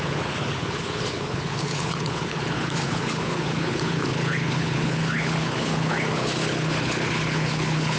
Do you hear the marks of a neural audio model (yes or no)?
yes